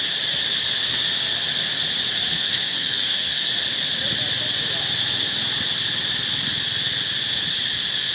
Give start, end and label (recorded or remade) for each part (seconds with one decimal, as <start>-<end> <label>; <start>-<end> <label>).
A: 0.0-2.3 recorded; 2.3-3.5 remade; 3.5-8.1 recorded